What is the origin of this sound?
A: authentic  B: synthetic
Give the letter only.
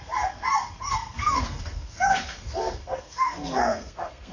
B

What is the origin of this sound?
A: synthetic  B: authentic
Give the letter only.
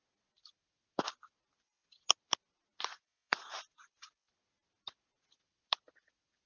B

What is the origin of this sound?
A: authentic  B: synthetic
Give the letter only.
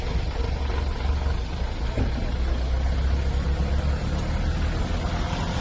A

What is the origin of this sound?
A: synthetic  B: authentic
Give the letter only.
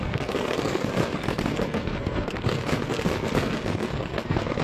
A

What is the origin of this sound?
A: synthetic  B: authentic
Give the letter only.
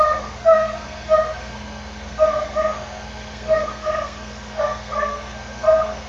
A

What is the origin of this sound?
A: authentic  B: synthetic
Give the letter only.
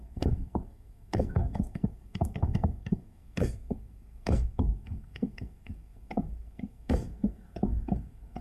B